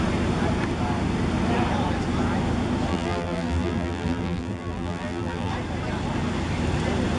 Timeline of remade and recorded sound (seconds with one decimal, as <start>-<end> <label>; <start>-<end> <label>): 0.0-2.9 recorded; 2.9-5.5 remade; 5.5-7.2 recorded

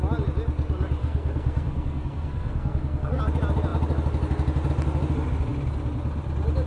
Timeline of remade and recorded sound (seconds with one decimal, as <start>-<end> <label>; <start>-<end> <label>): 0.0-1.0 recorded; 1.0-3.2 remade; 3.2-6.7 recorded

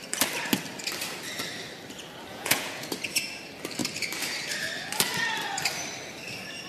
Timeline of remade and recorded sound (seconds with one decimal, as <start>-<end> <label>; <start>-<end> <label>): 0.0-2.3 recorded; 2.3-2.9 remade; 2.9-6.7 recorded